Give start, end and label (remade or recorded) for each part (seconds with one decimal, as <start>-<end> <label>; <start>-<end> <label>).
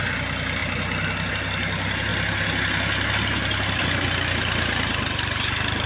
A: 0.0-5.9 recorded